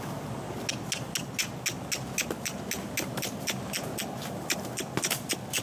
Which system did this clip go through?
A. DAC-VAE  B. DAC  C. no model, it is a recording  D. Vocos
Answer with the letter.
C